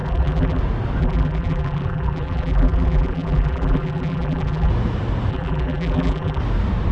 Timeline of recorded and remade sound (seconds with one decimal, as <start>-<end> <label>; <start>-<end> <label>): 0.0-0.6 remade; 0.6-1.0 recorded; 1.0-4.7 remade; 4.7-5.3 recorded; 5.3-6.4 remade; 6.4-6.9 recorded